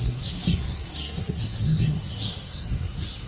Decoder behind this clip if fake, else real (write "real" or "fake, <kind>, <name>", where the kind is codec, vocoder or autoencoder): fake, codec, SNAC